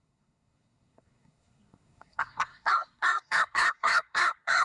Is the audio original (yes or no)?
no